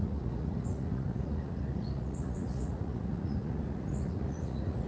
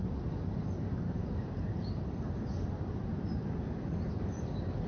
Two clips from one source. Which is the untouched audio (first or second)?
second